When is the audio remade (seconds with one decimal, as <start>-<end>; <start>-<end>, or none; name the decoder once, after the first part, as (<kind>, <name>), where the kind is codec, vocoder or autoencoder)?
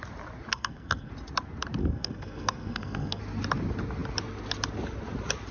0.5-1.1 (codec, SNAC); 1.8-3.2